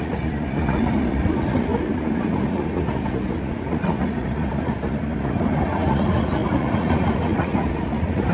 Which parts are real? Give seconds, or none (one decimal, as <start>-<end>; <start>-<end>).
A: none